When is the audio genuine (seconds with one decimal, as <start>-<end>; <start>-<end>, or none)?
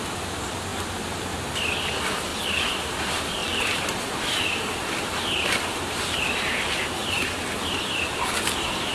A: 0.0-3.4; 5.8-7.0; 8.1-8.9